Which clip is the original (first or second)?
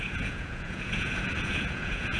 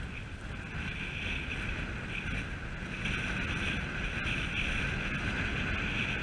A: second